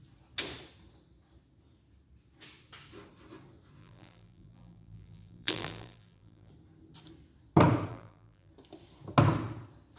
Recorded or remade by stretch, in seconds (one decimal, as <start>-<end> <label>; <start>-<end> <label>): 0.0-3.8 recorded; 3.8-6.5 remade; 6.5-7.9 recorded; 7.9-8.5 remade; 8.5-10.0 recorded